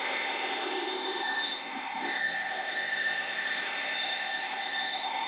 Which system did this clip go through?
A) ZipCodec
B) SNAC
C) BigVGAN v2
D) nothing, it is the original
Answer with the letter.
A